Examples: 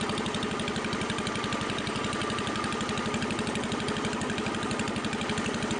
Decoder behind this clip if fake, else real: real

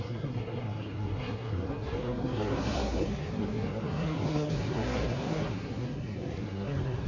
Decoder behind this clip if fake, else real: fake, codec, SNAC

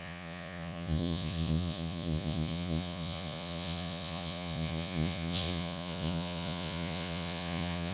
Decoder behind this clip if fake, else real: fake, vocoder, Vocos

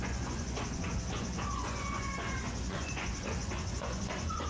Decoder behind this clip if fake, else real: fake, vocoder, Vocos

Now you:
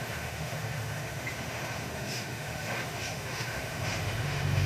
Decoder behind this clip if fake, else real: fake, autoencoder, DAC-VAE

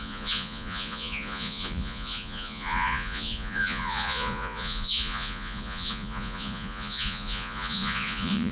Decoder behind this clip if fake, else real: fake, vocoder, Vocos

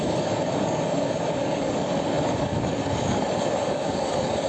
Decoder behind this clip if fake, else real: fake, codec, DAC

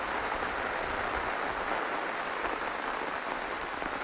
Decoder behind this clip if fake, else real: real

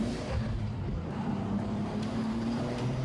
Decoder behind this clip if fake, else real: fake, vocoder, BigVGAN v2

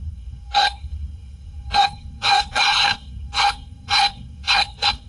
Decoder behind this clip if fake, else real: fake, codec, SNAC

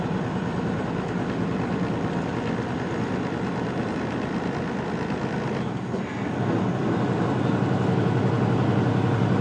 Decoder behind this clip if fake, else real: real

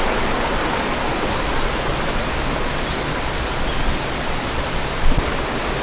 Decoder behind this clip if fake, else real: real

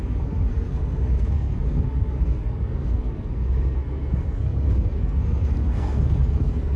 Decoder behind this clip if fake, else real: fake, codec, SNAC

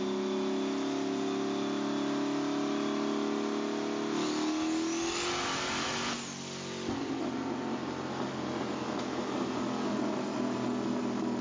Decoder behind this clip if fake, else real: real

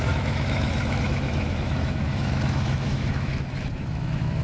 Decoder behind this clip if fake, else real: fake, autoencoder, DAC-VAE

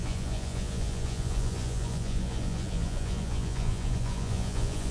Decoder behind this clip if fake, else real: fake, vocoder, Vocos